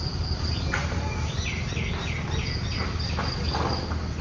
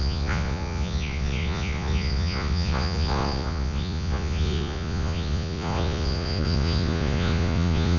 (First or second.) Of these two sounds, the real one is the first